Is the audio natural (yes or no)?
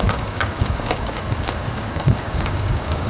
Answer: no